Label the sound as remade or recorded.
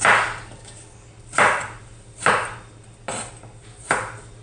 recorded